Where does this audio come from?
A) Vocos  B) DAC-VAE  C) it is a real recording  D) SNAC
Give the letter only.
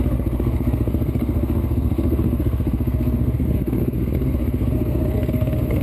D